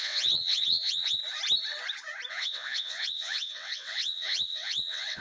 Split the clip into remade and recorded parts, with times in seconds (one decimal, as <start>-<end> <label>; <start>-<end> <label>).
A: 0.0-1.2 remade; 1.2-2.3 recorded; 2.3-5.2 remade